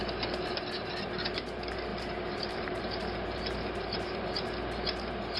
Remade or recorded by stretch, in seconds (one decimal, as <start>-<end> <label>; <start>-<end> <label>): 0.0-1.9 recorded; 1.9-4.3 remade; 4.3-5.4 recorded